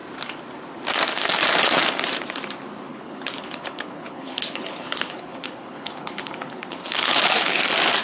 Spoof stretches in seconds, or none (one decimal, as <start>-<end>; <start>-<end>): 2.9-7.6